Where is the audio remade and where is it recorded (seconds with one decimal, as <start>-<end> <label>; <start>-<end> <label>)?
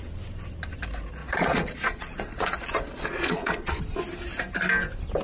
0.0-1.2 recorded; 1.2-3.8 remade; 3.8-5.2 recorded